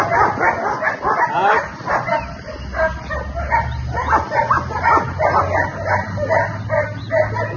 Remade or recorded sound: recorded